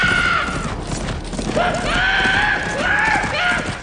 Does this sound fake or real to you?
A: real